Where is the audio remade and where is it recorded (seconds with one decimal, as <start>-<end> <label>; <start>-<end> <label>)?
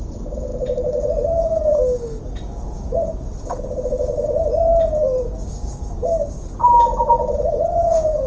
0.0-0.5 remade; 0.5-1.4 recorded; 1.4-1.8 remade; 1.8-2.4 recorded; 2.4-6.1 remade; 6.1-7.1 recorded; 7.1-8.3 remade